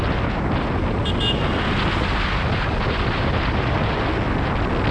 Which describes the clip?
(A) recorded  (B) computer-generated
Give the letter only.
A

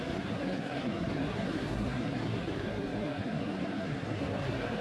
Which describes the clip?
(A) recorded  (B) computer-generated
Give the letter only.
B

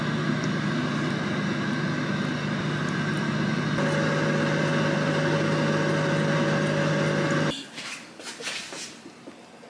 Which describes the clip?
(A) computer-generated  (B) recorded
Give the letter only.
B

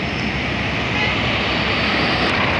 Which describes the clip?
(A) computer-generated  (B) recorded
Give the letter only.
B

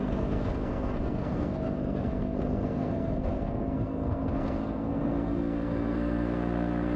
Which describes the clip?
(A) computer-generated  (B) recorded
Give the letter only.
A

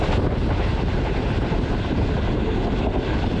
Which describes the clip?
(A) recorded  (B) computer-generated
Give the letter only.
A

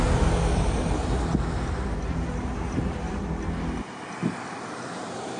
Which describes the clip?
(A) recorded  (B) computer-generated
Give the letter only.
A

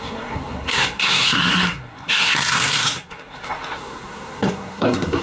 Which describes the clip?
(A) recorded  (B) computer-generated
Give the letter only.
B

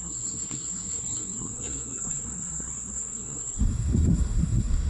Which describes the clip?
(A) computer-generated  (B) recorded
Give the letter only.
A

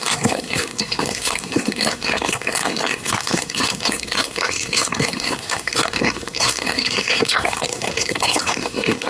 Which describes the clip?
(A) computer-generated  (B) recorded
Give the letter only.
A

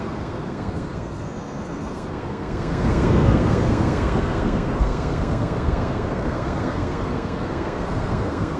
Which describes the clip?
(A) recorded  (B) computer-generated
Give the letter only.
B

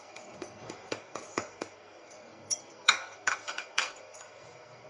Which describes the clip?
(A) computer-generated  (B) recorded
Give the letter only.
A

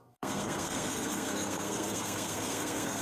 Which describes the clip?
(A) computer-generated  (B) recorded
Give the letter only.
A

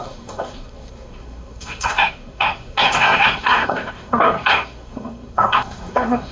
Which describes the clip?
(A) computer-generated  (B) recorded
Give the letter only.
A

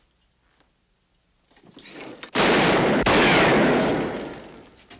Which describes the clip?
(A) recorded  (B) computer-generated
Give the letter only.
A